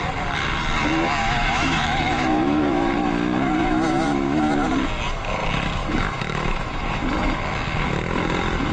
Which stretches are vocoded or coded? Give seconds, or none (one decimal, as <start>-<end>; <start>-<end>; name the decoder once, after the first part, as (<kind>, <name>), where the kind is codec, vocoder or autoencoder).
1.2-2.9 (autoencoder, DAC-VAE); 3.6-4.4; 5.8-6.8